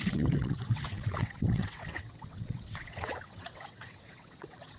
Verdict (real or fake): fake